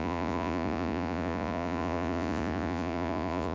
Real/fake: fake